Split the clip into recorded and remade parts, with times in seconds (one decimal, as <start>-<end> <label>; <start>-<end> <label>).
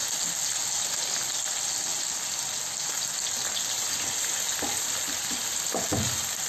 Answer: 0.0-6.5 recorded